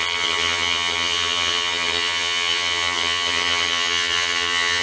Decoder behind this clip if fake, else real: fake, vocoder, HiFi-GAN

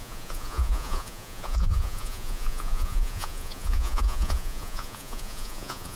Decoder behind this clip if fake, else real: fake, vocoder, Vocos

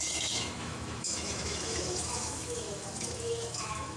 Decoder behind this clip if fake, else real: fake, autoencoder, DAC-VAE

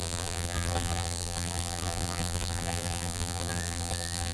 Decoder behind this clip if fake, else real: fake, vocoder, BigVGAN v2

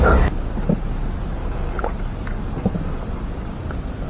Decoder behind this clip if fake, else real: real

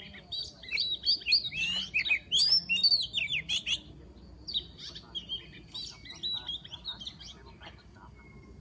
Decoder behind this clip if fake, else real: real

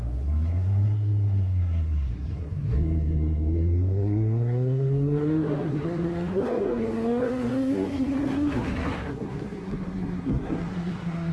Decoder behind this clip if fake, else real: fake, codec, SNAC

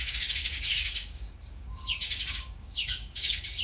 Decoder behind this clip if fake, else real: fake, codec, DAC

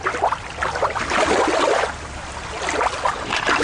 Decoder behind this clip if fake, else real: real